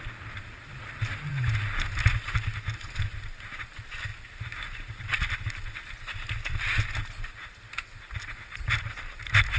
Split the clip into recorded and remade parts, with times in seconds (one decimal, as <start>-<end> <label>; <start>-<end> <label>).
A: 0.0-9.6 recorded